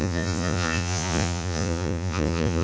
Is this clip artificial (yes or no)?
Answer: yes